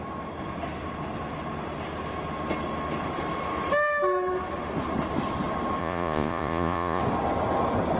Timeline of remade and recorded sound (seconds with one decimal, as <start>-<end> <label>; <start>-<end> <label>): 0.0-5.8 recorded; 5.8-7.0 remade; 7.0-8.0 recorded